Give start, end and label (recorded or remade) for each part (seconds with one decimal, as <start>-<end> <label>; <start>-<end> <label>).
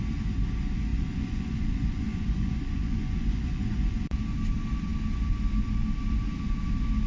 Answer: 0.0-0.9 recorded; 0.9-4.2 remade; 4.2-7.1 recorded